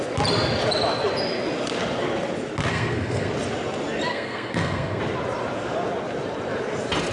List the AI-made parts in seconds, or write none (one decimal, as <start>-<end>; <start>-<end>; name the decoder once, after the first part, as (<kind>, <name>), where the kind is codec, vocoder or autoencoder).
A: 2.7-3.3 (codec, SNAC); 4.1-5.0